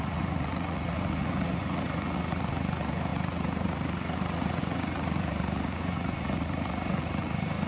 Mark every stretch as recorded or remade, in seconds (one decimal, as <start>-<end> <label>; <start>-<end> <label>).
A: 0.0-7.7 remade